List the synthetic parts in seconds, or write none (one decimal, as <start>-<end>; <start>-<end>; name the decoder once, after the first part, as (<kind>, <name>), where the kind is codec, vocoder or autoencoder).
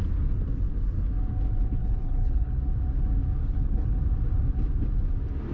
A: 1.8-2.6 (codec, HILCodec); 3.4-4.0